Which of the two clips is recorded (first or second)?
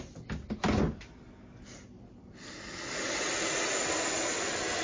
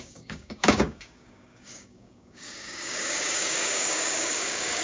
first